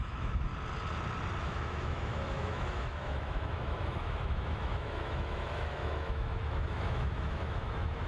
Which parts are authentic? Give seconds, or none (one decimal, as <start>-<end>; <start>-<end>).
0.5-1.4